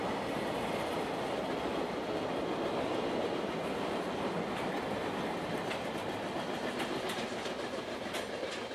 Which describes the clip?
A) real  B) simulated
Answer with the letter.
A